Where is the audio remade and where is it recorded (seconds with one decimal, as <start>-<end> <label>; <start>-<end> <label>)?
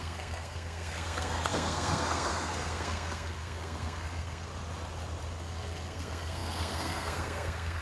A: 0.0-4.5 remade; 4.5-5.4 recorded; 5.4-7.8 remade